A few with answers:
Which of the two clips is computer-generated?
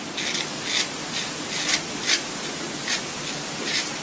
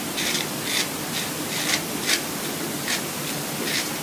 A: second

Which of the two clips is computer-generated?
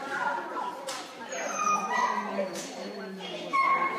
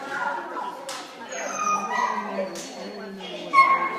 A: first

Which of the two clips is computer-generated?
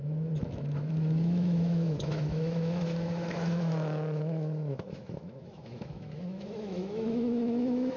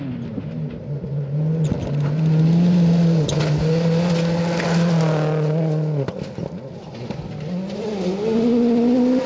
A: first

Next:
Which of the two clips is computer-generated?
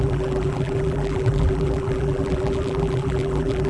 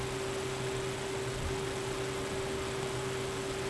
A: first